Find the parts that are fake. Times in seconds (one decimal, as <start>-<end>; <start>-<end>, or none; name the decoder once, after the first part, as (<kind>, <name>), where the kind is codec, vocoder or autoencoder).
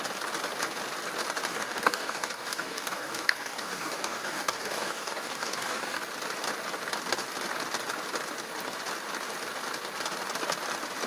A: 1.5-6.0 (codec, DAC)